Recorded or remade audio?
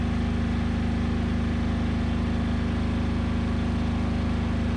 recorded